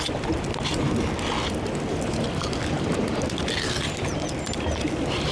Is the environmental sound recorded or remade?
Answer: recorded